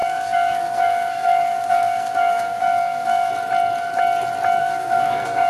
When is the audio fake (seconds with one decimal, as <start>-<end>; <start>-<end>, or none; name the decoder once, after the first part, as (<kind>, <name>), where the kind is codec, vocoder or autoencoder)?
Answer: 0.0-3.3 (codec, SNAC); 4.6-5.5